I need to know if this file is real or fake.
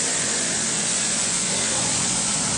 fake